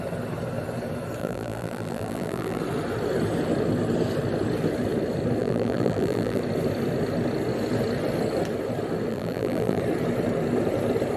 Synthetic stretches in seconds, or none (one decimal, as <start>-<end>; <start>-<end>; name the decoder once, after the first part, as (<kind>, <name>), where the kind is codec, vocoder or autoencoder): 1.2-2.6 (vocoder, BigVGAN v2); 5.4-6.4; 9.1-9.8